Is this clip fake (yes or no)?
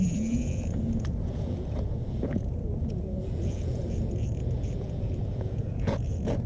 yes